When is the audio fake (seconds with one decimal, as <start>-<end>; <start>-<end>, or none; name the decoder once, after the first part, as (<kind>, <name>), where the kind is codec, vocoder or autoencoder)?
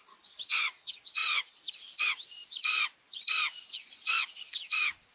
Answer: none